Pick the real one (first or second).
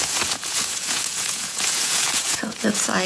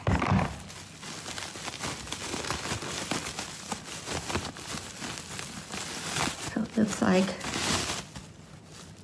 second